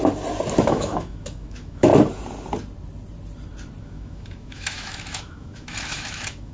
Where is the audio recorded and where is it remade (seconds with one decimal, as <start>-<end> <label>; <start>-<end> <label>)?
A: 0.0-0.6 recorded; 0.6-1.9 remade; 1.9-3.8 recorded; 3.8-6.5 remade